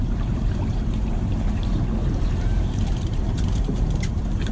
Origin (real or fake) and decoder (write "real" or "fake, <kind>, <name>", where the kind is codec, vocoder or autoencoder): fake, vocoder, BigVGAN v2